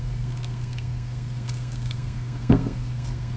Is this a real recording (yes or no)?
no